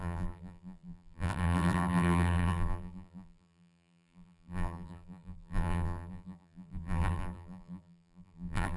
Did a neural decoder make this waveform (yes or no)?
yes